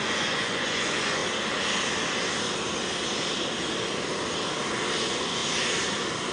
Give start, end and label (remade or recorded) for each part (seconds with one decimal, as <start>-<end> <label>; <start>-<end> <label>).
0.0-1.2 remade; 1.2-5.0 recorded; 5.0-5.4 remade; 5.4-6.3 recorded